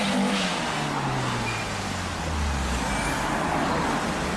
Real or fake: real